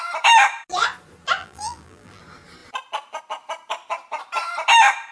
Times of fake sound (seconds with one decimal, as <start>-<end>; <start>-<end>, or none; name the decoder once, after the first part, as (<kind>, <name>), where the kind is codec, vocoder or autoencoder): 1.4-2.2 (vocoder, BigVGAN v2)